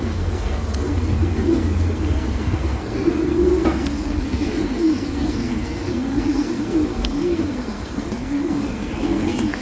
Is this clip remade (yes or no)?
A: yes